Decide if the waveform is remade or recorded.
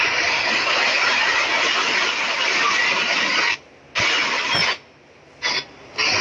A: recorded